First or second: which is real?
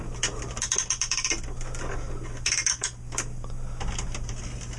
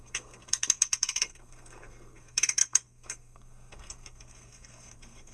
first